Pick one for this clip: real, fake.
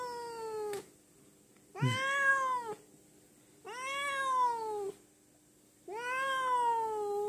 real